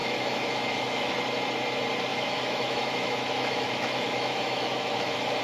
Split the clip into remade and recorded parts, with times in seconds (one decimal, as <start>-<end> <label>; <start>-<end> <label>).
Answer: 0.0-1.1 remade; 1.1-2.1 recorded; 2.1-5.4 remade